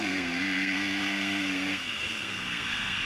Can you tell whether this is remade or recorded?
remade